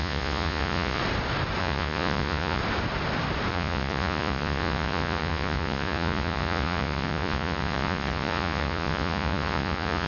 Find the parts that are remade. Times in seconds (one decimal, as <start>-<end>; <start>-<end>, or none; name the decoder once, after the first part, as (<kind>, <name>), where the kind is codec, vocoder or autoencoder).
0.0-1.0 (vocoder, Vocos); 1.6-2.6; 3.5-10.1